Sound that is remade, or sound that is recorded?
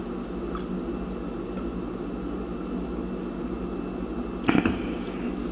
recorded